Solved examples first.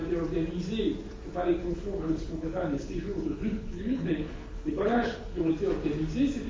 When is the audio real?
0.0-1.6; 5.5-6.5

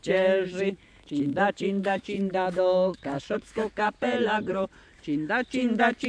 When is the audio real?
3.7-6.1

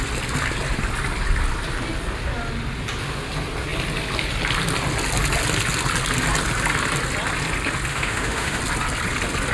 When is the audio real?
0.0-7.9; 8.6-9.5

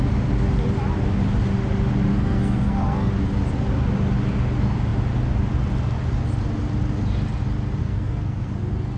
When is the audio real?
0.0-2.1; 3.1-7.8; 8.5-9.0

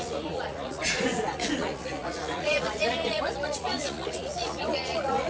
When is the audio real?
none

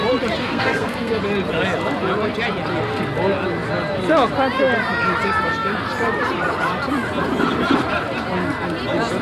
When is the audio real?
0.0-0.4; 1.2-9.2

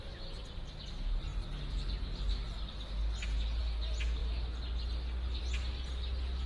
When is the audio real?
0.0-6.5

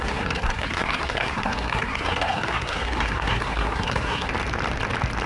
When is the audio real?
4.3-5.3